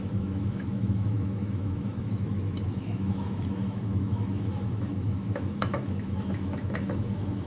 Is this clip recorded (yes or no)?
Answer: no